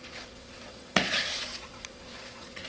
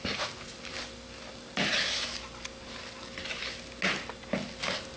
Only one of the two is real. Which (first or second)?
second